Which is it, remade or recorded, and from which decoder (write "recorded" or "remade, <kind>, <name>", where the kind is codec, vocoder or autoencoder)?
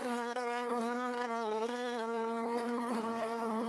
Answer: remade, codec, SNAC